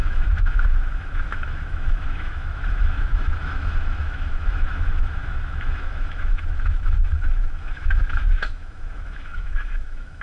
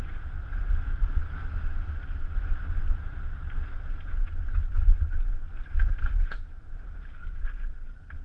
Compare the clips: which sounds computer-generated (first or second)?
first